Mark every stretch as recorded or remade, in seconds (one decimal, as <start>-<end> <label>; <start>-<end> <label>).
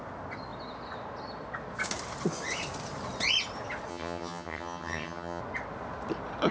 0.0-3.9 recorded; 3.9-5.4 remade; 5.4-6.5 recorded